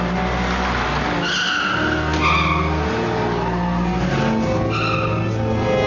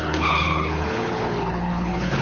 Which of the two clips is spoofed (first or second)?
second